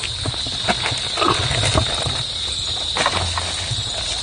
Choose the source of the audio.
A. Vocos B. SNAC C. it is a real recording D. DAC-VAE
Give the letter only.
C